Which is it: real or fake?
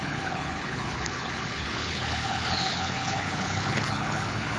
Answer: fake